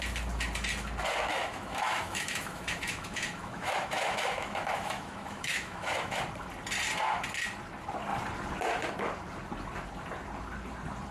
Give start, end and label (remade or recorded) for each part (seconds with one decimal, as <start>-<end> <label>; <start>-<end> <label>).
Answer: 0.0-1.3 recorded; 1.3-6.2 remade; 6.2-11.1 recorded